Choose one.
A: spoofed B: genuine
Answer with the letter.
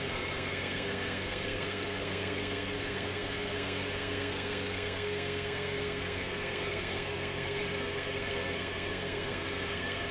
A